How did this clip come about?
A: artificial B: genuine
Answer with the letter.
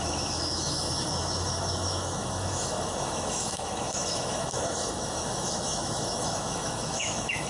A